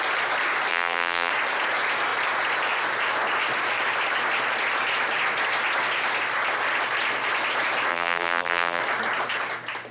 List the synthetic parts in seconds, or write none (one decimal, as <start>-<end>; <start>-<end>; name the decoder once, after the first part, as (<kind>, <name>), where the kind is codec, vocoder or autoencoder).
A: 0.7-1.3 (vocoder, BigVGAN v2); 7.9-8.8